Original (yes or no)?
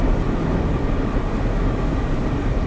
yes